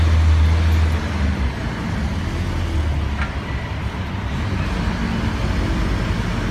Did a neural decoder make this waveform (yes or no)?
no